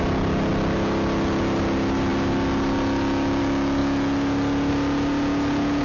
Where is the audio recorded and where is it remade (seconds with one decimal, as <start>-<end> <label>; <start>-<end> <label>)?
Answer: 0.0-5.8 recorded